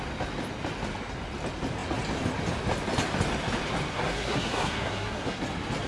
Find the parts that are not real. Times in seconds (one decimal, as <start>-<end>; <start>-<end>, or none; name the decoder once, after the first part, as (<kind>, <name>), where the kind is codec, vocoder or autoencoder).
3.9-5.4 (codec, SNAC)